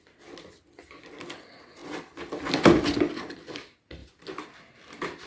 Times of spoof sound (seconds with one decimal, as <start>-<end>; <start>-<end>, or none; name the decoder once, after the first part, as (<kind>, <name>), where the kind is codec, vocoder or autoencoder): none